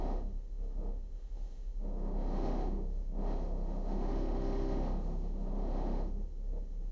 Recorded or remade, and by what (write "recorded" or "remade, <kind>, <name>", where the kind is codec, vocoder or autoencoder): remade, autoencoder, DAC-VAE